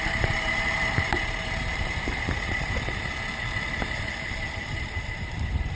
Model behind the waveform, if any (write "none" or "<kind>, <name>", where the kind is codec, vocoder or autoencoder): vocoder, BigVGAN v2